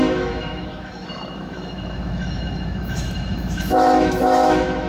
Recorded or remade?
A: remade